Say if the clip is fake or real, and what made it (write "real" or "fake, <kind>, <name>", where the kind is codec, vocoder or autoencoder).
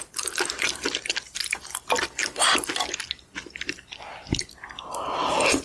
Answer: fake, vocoder, BigVGAN v2